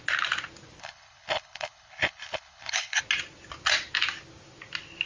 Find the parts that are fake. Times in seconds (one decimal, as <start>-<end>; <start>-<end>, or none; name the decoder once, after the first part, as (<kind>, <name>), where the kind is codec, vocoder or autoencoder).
0.8-3.0 (codec, HILCodec)